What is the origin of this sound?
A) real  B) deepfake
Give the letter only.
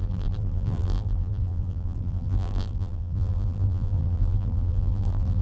B